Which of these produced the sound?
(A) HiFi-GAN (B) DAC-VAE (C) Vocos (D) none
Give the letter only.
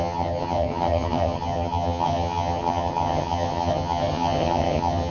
A